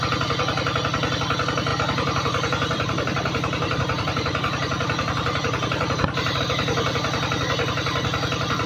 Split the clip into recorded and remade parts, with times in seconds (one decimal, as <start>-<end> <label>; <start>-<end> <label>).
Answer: 0.0-1.7 recorded; 1.7-6.4 remade; 6.4-8.7 recorded